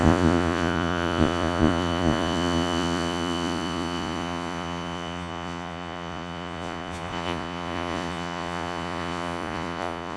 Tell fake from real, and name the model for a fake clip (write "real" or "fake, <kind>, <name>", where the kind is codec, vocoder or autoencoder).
fake, vocoder, Vocos